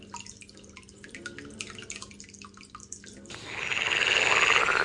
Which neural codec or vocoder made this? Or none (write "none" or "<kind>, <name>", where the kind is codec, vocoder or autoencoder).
none